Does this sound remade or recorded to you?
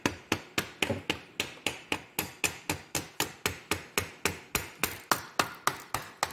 recorded